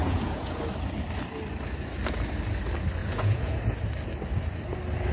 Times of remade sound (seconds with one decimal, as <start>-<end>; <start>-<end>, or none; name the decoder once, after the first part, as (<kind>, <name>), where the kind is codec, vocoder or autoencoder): 0.0-0.6 (vocoder, Vocos); 3.0-3.6